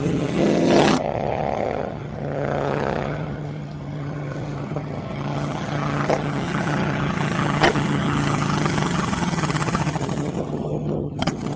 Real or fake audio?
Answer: fake